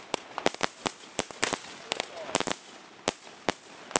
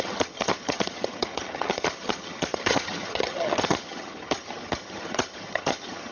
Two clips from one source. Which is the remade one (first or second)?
second